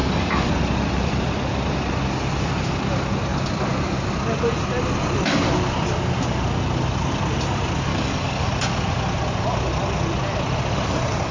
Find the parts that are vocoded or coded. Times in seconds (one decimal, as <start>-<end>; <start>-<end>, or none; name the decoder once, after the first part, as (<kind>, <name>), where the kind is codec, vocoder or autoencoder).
0.0-0.5 (codec, DAC); 7.9-8.5